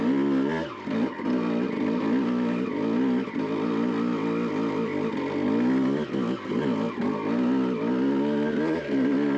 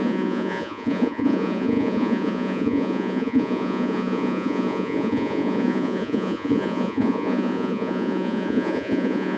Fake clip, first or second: second